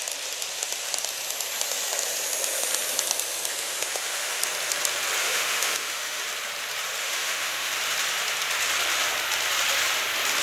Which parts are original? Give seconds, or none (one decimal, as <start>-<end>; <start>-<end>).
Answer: 0.0-3.5; 4.4-5.2; 6.2-7.0; 7.7-10.4